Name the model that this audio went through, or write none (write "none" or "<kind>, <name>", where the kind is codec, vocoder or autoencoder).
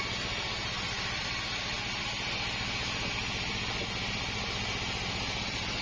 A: none